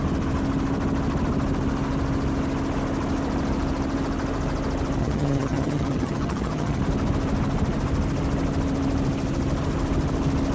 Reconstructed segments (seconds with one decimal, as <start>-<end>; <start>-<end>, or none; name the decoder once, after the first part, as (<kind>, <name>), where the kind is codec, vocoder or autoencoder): 5.0-6.8 (vocoder, HiFi-GAN)

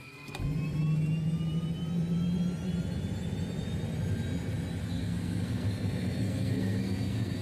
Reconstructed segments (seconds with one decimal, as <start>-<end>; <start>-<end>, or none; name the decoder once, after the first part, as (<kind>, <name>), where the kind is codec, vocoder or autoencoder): 0.0-0.4 (codec, SNAC); 4.8-7.4

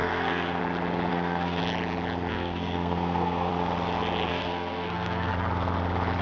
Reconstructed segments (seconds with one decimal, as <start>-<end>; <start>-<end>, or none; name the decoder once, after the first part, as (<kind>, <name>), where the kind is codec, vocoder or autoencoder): 0.0-0.6 (codec, SNAC); 1.1-1.6; 2.3-3.5; 4.3-5.3

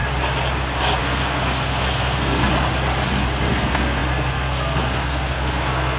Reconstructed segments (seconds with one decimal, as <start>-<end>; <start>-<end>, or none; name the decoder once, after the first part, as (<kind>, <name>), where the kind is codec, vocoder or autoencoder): 1.0-2.5 (codec, SNAC); 3.5-6.0

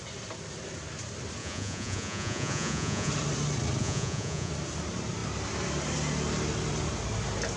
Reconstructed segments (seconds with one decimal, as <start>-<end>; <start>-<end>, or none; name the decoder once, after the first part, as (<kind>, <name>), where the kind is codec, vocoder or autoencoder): 1.4-3.1 (vocoder, Vocos); 3.8-4.5

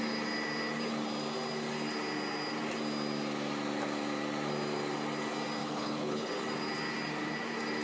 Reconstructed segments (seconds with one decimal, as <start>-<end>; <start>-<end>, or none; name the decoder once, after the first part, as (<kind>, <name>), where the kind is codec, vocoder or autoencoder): 5.6-6.3 (codec, HILCodec)

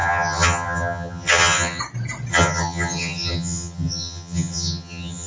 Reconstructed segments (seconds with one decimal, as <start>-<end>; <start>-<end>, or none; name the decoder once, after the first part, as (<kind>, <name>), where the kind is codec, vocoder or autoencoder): 0.0-1.8 (vocoder, HiFi-GAN); 2.3-5.3